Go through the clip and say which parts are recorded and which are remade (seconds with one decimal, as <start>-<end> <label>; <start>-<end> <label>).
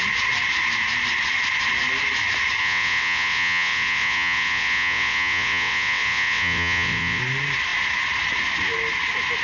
0.0-2.6 recorded; 2.6-7.2 remade; 7.2-9.4 recorded